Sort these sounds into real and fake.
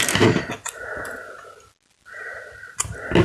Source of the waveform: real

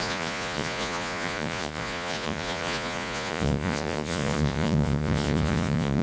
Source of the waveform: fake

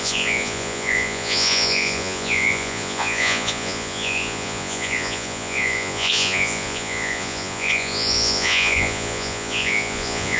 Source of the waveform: fake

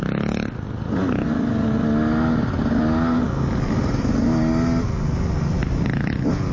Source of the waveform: real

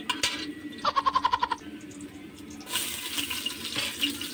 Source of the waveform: real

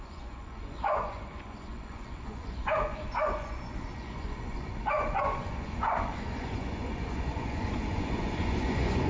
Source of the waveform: fake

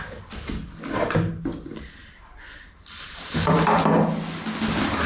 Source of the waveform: real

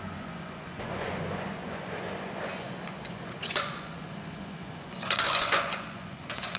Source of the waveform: fake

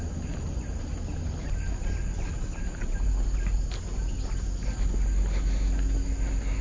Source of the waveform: real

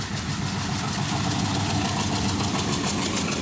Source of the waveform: real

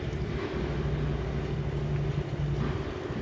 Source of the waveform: real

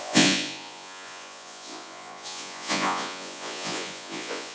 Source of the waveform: fake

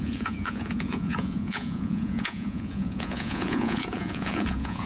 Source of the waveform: fake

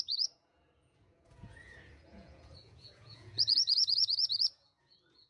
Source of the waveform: fake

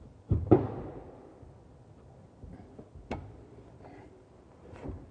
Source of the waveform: real